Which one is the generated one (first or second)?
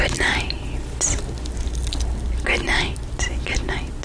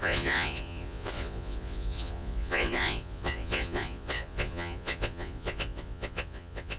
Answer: second